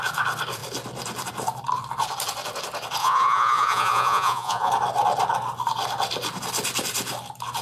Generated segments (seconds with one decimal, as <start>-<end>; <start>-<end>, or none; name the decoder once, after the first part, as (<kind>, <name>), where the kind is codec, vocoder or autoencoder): 3.0-4.7 (vocoder, Vocos)